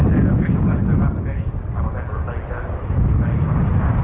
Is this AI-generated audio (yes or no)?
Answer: no